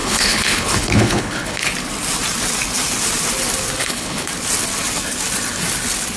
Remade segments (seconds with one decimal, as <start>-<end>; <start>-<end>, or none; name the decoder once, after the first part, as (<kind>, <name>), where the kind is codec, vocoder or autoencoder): 0.0-1.7 (codec, HILCodec); 3.8-4.3